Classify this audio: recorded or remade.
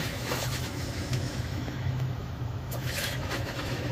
remade